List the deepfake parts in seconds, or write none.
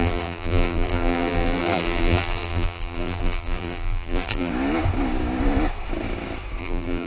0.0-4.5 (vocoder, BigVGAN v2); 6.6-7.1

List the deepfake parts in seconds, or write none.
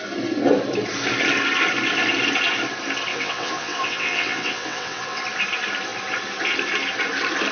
3.1-5.2 (vocoder, WaveNeXt)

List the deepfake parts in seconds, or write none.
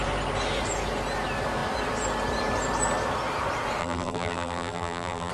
3.8-5.3 (vocoder, BigVGAN v2)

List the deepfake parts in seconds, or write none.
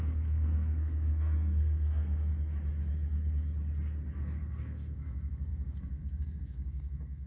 0.0-2.3 (codec, SNAC); 4.2-7.3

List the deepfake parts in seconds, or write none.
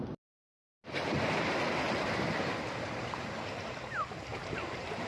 4.3-5.1 (vocoder, BigVGAN v2)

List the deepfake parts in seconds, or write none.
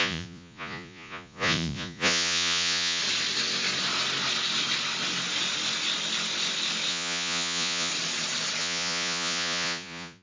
0.0-3.0 (vocoder, Vocos); 6.9-7.9; 8.6-10.2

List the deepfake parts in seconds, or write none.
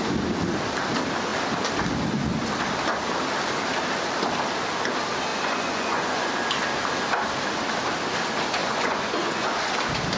5.3-6.3 (vocoder, Vocos); 8.6-9.7